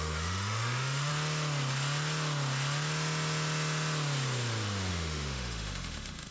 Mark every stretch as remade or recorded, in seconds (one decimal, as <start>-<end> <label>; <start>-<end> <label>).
0.0-1.1 remade; 1.1-4.9 recorded; 4.9-6.3 remade